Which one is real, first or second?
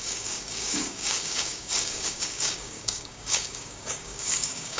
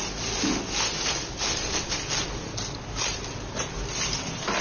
second